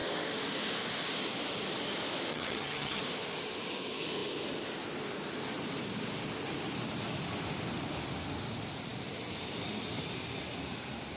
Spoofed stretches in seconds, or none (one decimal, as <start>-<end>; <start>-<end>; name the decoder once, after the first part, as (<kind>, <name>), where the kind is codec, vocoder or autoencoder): 2.3-3.0 (vocoder, HiFi-GAN)